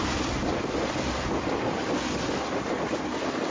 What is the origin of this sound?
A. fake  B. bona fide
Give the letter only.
B